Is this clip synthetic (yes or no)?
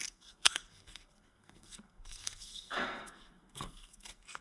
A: yes